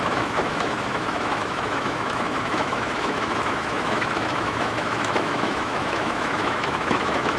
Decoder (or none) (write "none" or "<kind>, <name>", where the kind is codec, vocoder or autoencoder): autoencoder, DAC-VAE